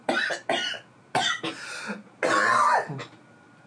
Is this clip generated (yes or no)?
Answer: no